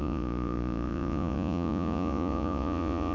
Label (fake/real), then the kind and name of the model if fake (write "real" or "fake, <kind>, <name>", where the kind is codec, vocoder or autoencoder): fake, vocoder, Vocos